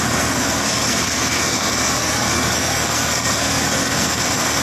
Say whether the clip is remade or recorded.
remade